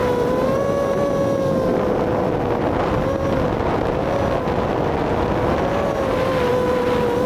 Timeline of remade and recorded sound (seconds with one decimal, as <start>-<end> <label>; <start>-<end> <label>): 0.0-0.6 remade; 0.6-7.3 recorded